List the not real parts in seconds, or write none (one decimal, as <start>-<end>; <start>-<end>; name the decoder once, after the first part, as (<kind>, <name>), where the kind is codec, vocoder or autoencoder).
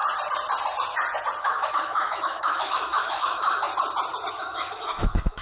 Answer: 1.4-3.7 (autoencoder, DAC-VAE); 4.3-5.4